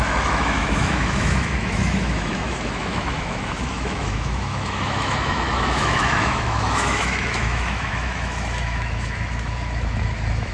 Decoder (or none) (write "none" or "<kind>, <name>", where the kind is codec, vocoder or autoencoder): autoencoder, DAC-VAE